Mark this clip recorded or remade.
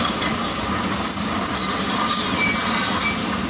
recorded